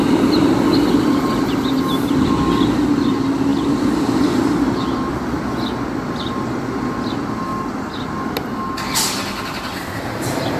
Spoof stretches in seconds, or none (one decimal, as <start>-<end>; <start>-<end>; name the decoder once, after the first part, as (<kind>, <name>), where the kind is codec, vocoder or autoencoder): none